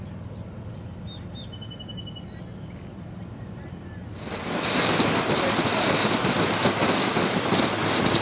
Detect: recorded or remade recorded